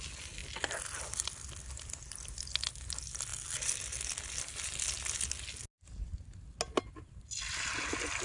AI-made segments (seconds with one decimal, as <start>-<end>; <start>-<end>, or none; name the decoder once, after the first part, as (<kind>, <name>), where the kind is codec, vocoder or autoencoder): none